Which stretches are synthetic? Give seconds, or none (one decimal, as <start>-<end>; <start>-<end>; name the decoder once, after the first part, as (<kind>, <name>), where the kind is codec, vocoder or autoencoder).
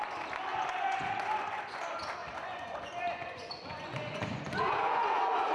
0.5-1.8 (vocoder, Vocos); 2.2-5.5